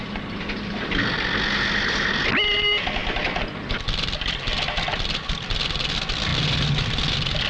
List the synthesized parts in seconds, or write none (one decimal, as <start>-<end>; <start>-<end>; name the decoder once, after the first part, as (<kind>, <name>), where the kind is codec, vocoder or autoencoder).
none